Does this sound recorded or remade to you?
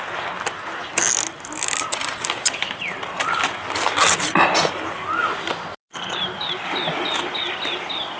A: recorded